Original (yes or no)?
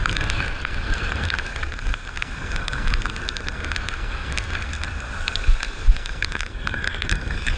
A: no